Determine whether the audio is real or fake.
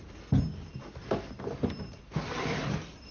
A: real